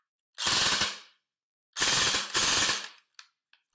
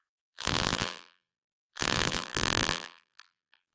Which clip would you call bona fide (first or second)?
first